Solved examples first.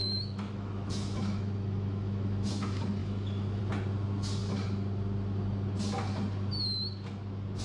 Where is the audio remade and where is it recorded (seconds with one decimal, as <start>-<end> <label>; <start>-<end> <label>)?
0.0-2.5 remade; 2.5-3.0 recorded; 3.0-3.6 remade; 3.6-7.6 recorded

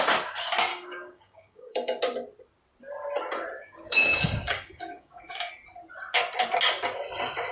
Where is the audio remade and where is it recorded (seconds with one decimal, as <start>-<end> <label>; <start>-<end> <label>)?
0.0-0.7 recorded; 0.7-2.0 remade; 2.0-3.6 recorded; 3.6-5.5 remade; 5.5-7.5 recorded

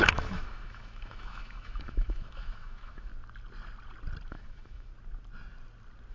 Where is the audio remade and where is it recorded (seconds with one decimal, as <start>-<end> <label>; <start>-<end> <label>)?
0.0-3.1 remade; 3.1-4.3 recorded; 4.3-4.9 remade; 4.9-6.1 recorded

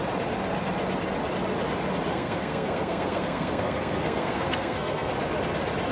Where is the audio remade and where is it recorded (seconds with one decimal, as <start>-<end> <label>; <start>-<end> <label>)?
0.0-2.1 recorded; 2.1-5.1 remade; 5.1-5.9 recorded

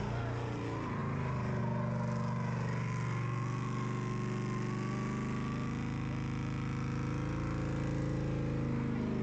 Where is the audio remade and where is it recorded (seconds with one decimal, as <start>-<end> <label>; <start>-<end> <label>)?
0.0-1.0 recorded; 1.0-1.6 remade; 1.6-9.2 recorded

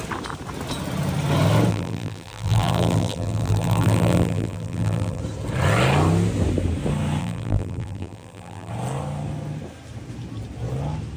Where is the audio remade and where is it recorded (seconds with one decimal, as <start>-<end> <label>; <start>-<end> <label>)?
0.0-1.7 recorded; 1.7-5.2 remade; 5.2-7.2 recorded; 7.2-8.7 remade; 8.7-11.2 recorded